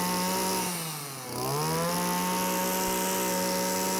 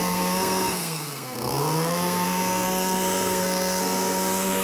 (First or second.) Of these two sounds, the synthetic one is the second